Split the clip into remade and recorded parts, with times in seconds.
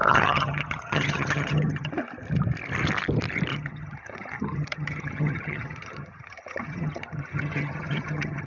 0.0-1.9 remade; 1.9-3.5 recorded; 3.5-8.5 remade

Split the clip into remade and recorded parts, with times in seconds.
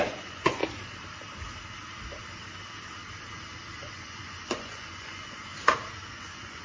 0.0-0.6 remade; 0.6-3.8 recorded; 3.8-5.5 remade; 5.5-6.1 recorded; 6.1-6.6 remade